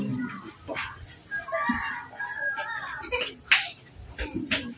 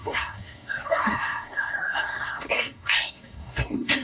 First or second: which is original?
first